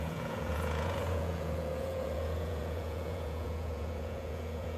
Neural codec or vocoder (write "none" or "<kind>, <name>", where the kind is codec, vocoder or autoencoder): vocoder, Vocos